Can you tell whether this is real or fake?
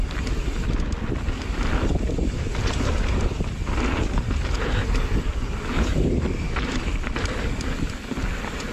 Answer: real